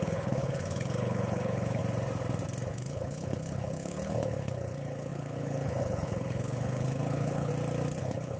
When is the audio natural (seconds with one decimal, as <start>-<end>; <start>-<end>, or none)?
1.8-2.7; 7.5-8.0